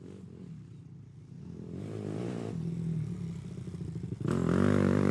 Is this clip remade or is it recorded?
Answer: recorded